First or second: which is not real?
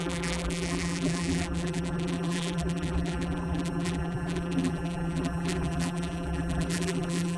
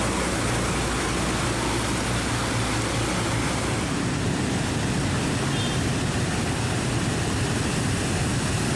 first